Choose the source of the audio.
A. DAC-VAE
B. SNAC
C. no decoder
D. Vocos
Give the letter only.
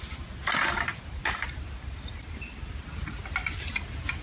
C